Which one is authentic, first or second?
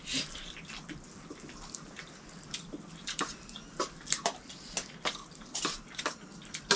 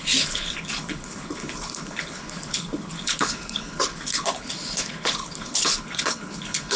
first